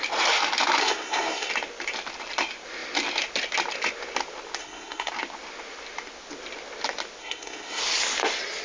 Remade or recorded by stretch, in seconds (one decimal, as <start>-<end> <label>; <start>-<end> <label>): 0.0-0.8 recorded; 0.8-1.5 remade; 1.5-4.6 recorded; 4.6-5.1 remade; 5.1-7.2 recorded; 7.2-7.8 remade; 7.8-8.6 recorded